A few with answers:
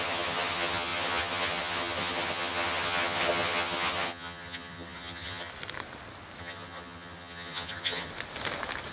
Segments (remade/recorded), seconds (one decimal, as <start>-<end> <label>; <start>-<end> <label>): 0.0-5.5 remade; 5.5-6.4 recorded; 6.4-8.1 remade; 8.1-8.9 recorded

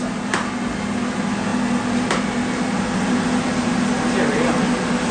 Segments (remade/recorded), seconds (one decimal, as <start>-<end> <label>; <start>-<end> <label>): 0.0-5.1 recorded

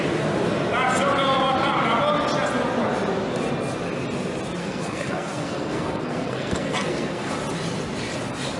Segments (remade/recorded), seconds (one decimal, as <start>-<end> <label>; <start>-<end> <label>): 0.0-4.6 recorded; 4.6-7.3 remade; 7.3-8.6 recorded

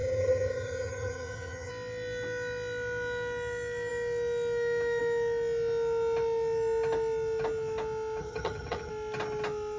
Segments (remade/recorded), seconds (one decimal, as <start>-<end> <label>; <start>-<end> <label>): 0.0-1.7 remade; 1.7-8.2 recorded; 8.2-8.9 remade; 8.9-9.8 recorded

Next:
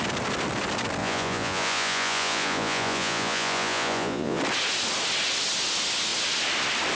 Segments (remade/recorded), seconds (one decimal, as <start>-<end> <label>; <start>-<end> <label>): 0.0-1.0 recorded; 1.0-4.4 remade; 4.4-6.9 recorded

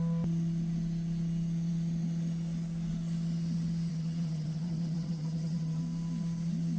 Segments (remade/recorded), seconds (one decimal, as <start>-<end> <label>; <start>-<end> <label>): 0.0-3.9 recorded; 3.9-5.8 remade; 5.8-6.8 recorded